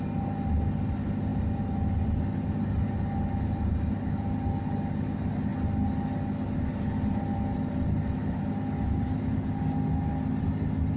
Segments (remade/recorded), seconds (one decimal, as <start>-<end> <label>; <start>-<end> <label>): 0.0-11.0 recorded